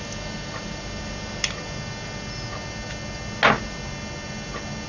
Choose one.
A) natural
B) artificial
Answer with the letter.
A